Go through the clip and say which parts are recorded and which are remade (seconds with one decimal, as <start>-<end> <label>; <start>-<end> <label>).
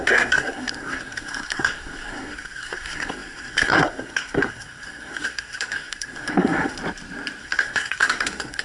0.0-6.8 remade; 6.8-7.4 recorded; 7.4-8.6 remade